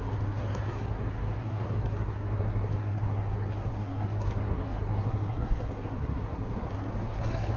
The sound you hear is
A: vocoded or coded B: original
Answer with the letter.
A